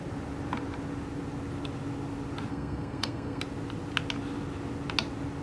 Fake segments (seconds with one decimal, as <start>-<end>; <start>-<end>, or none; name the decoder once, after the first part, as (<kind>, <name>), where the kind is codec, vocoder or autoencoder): 2.5-3.4 (codec, SNAC)